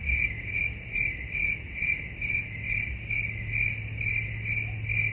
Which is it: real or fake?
real